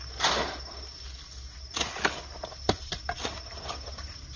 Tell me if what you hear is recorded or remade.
recorded